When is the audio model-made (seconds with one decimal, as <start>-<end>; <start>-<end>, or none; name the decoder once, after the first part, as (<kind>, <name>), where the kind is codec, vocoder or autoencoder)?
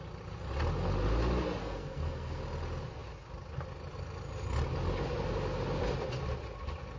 1.6-2.4 (codec, SNAC)